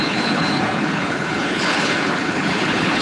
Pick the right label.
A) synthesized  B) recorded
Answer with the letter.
A